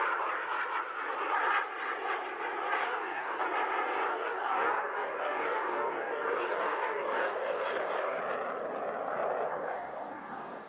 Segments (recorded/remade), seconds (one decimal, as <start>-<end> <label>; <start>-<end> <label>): 0.0-2.8 recorded; 2.8-3.4 remade; 3.4-4.1 recorded; 4.1-8.2 remade; 8.2-9.5 recorded; 9.5-10.7 remade